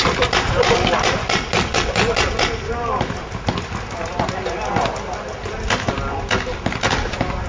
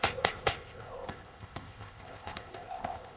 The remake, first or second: second